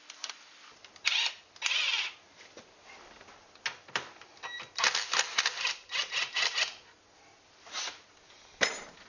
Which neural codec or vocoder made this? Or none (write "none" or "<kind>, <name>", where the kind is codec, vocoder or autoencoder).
none